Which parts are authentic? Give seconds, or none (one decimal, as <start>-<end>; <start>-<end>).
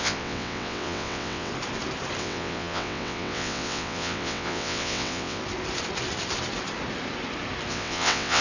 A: 1.5-2.2; 5.4-7.7